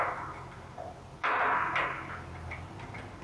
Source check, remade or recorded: recorded